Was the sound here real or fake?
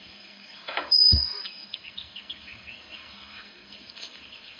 fake